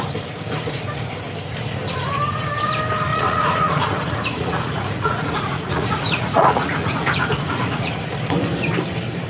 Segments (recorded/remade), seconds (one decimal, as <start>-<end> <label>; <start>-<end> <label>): 0.0-3.1 recorded; 3.1-7.9 remade; 7.9-9.3 recorded